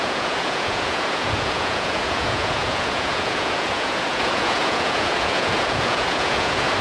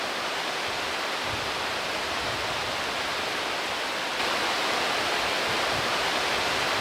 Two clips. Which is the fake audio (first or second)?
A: first